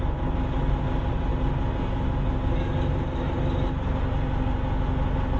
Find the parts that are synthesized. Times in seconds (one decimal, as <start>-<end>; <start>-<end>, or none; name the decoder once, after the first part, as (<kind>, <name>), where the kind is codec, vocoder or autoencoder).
none